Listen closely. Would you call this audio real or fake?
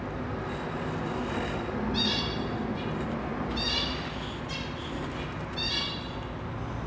real